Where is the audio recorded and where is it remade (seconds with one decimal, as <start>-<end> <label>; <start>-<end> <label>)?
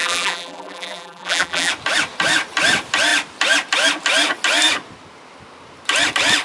0.0-1.7 remade; 1.7-6.4 recorded